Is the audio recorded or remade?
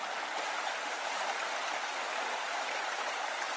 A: recorded